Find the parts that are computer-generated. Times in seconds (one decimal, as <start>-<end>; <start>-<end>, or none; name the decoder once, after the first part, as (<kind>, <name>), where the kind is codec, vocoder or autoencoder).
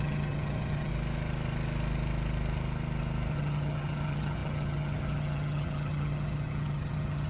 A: 0.0-0.9 (vocoder, HiFi-GAN); 3.3-7.3